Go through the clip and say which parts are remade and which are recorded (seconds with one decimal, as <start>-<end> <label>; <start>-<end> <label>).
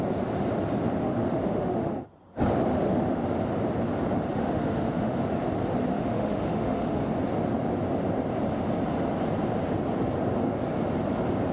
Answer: 0.0-1.0 recorded; 1.0-1.9 remade; 1.9-2.7 recorded; 2.7-3.4 remade; 3.4-4.4 recorded; 4.4-5.2 remade; 5.2-5.9 recorded; 5.9-7.0 remade; 7.0-11.5 recorded